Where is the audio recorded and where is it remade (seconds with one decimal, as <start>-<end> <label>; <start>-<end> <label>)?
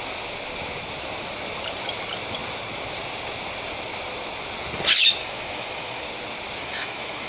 0.0-5.2 recorded; 5.2-6.0 remade; 6.0-6.6 recorded; 6.6-7.3 remade